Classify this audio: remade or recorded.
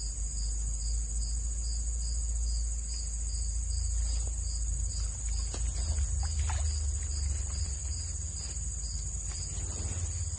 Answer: recorded